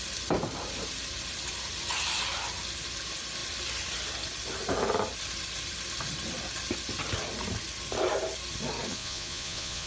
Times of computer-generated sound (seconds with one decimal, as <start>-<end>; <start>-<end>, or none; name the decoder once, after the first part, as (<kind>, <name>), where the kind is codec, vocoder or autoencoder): 8.9-9.9 (vocoder, Vocos)